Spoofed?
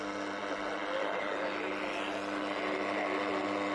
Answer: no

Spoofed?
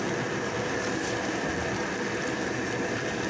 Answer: no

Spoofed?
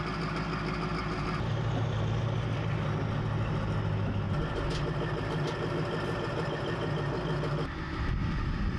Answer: no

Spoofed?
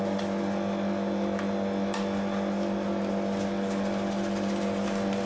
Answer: no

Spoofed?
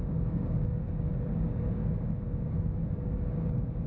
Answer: yes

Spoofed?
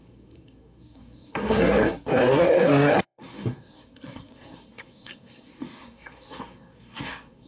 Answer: yes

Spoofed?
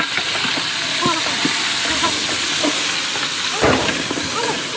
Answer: no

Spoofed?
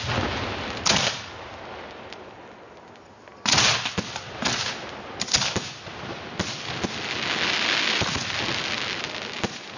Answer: no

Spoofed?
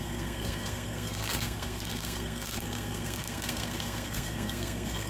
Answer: yes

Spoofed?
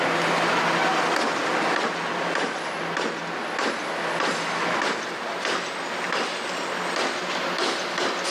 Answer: no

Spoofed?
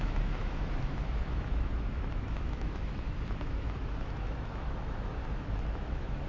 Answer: yes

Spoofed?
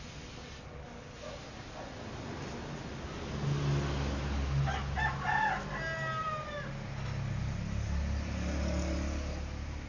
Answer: no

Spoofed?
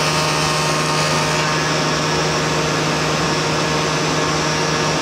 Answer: no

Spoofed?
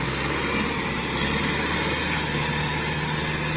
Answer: no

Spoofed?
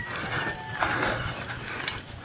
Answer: no